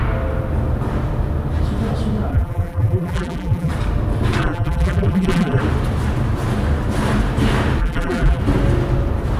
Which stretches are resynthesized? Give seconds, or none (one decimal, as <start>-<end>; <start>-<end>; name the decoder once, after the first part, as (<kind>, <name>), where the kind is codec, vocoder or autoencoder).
2.3-3.7 (vocoder, BigVGAN v2); 4.4-5.6; 7.8-8.4